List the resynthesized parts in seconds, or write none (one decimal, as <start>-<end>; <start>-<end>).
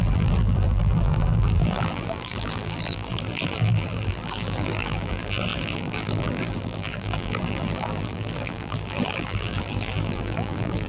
0.0-10.9